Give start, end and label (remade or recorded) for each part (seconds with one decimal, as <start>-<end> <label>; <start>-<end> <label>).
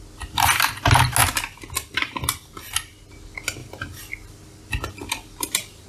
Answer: 0.0-1.2 recorded; 1.2-3.1 remade; 3.1-3.6 recorded; 3.6-5.9 remade